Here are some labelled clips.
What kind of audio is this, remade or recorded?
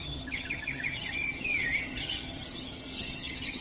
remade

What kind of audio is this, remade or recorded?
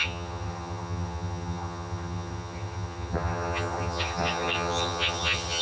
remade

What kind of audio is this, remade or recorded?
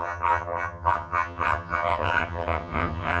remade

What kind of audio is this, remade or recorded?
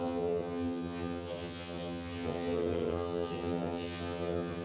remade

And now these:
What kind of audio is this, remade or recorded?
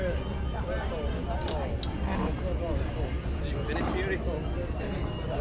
recorded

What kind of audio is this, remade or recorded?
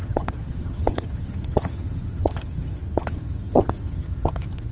remade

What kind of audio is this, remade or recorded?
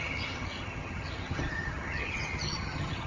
remade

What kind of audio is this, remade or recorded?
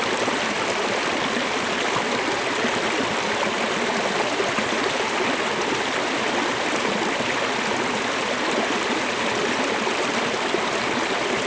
recorded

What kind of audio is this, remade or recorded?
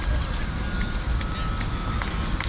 recorded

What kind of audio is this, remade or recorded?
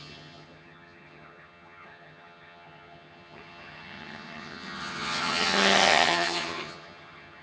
remade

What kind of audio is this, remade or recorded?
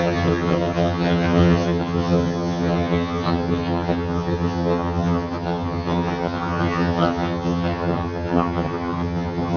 remade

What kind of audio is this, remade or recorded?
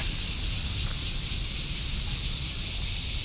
recorded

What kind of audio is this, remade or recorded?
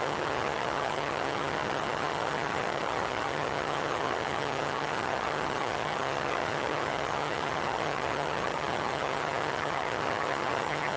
remade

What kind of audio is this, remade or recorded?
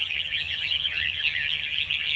remade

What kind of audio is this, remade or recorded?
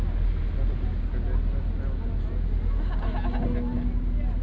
recorded